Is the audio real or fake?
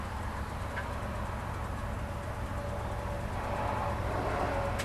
real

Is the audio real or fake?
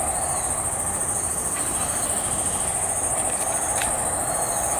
real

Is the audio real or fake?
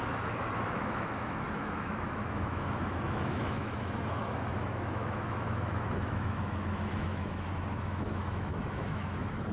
fake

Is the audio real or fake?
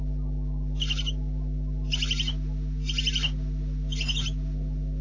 real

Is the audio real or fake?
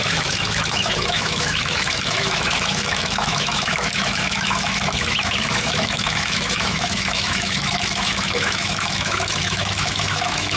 fake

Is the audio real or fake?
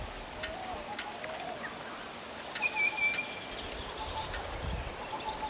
real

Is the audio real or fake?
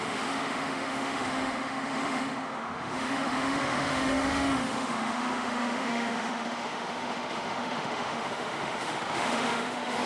fake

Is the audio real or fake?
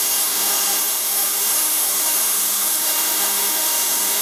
fake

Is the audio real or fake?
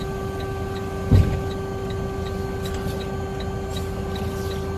real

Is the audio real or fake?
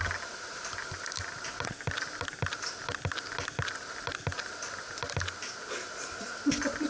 real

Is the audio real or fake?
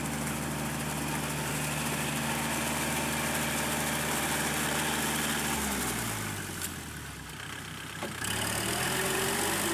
real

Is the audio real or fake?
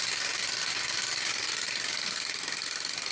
real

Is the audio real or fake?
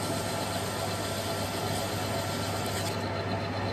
real